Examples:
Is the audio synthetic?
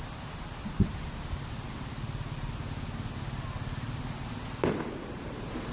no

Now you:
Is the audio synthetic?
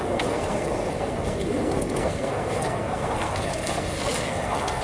yes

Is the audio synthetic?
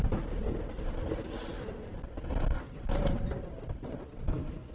no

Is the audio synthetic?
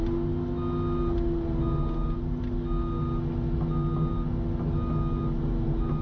no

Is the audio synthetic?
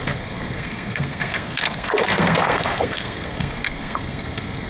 yes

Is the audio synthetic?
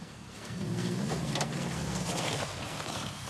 yes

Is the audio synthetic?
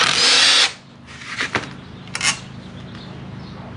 no